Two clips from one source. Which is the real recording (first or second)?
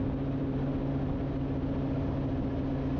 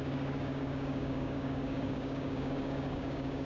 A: first